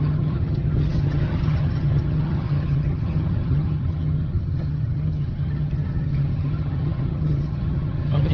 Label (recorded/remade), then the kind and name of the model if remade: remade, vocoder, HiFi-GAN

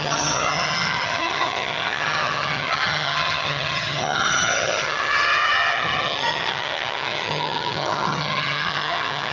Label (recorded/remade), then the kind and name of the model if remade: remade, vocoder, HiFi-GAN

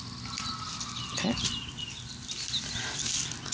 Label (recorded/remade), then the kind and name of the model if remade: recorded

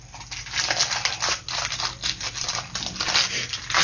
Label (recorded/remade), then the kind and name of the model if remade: recorded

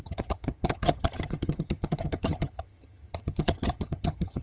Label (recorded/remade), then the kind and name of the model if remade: remade, vocoder, HiFi-GAN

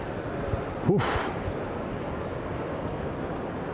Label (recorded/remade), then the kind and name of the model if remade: recorded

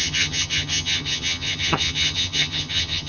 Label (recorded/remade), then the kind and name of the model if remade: remade, vocoder, HiFi-GAN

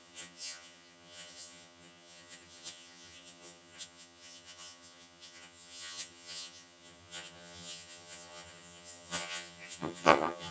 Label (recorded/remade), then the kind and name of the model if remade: remade, vocoder, HiFi-GAN